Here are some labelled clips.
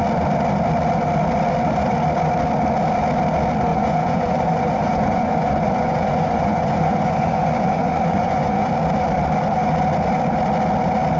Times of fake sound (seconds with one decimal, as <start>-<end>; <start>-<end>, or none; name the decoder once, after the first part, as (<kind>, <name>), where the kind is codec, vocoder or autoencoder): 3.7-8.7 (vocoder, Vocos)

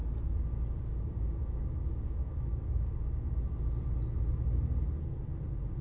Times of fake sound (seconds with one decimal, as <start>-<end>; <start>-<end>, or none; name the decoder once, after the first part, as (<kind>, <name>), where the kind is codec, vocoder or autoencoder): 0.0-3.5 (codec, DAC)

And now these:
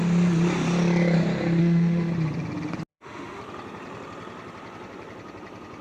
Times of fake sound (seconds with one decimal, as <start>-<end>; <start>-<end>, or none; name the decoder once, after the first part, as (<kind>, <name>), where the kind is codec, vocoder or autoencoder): 1.6-2.1 (autoencoder, DAC-VAE); 2.9-3.4